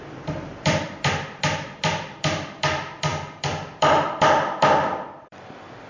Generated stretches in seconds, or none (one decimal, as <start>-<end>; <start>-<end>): 0.0-5.9